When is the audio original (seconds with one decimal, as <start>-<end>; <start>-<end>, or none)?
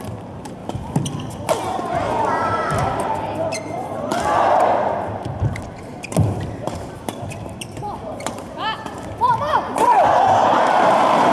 0.6-3.6; 4.1-6.2